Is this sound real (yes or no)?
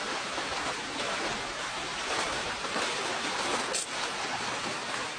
yes